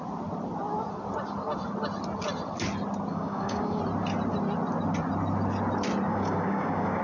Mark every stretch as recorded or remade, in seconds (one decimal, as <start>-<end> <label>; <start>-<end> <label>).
0.0-3.1 recorded; 3.1-3.8 remade; 3.8-6.1 recorded; 6.1-7.0 remade